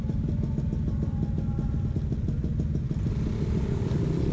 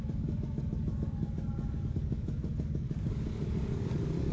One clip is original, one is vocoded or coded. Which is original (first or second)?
first